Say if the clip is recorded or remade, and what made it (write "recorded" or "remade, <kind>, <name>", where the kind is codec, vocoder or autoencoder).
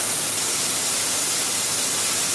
recorded